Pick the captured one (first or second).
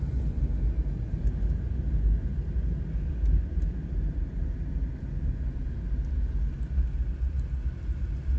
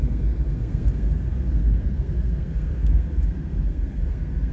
first